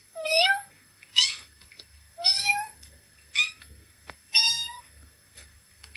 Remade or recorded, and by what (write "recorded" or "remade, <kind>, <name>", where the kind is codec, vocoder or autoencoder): remade, codec, SNAC